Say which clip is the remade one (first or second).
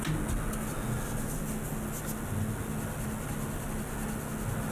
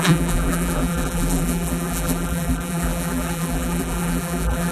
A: second